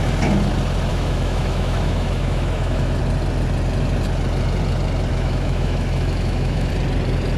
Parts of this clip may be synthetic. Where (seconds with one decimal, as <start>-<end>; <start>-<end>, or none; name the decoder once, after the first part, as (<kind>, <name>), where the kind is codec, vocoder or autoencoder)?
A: 0.9-3.0 (autoencoder, DAC-VAE); 5.1-6.7